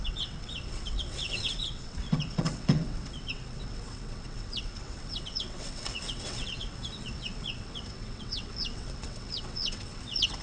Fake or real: fake